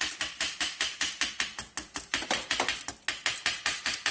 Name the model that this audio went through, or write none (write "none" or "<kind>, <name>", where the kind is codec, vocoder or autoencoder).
none